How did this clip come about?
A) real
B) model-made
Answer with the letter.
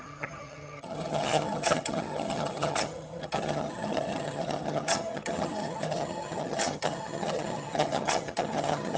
B